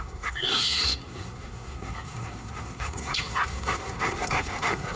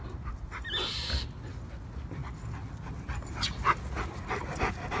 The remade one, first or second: first